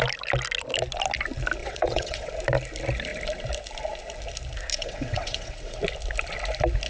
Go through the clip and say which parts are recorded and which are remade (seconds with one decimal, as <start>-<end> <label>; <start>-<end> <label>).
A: 0.0-1.6 recorded; 1.6-2.3 remade; 2.3-4.7 recorded; 4.7-5.8 remade; 5.8-6.9 recorded

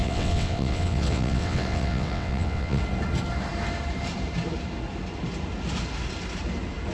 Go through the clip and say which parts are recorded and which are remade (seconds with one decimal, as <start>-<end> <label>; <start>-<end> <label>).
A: 0.0-2.8 remade; 2.8-6.9 recorded

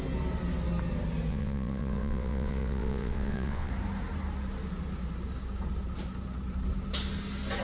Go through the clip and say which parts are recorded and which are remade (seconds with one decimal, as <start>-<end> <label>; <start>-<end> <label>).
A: 0.0-1.3 recorded; 1.3-3.7 remade; 3.7-7.6 recorded

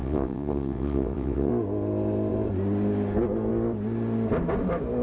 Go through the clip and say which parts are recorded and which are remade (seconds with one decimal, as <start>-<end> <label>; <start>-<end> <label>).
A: 0.0-1.5 remade; 1.5-5.0 recorded

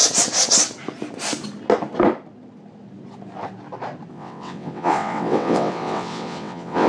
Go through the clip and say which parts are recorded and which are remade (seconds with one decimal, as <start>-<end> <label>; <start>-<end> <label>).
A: 0.0-4.1 recorded; 4.1-6.9 remade

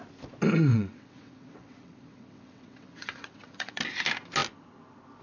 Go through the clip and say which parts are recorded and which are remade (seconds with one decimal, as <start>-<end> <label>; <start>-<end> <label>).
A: 0.0-0.7 recorded; 0.7-3.8 remade; 3.8-5.2 recorded

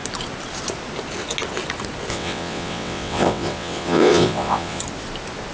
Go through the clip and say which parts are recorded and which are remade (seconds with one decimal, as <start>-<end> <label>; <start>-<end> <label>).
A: 0.0-2.1 recorded; 2.1-4.8 remade; 4.8-5.5 recorded

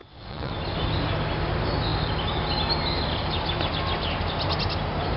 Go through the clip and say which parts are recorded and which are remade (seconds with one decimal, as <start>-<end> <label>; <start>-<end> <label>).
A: 0.0-0.5 remade; 0.5-5.2 recorded